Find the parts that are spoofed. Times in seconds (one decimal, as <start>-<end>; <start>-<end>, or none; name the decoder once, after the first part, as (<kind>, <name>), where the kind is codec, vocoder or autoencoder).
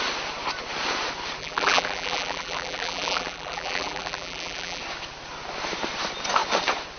1.4-4.8 (vocoder, BigVGAN v2)